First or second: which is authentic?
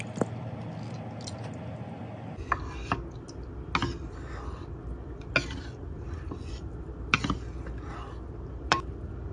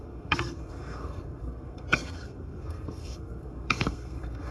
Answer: first